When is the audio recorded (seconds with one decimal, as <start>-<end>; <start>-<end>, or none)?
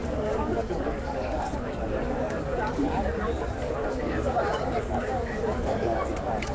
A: none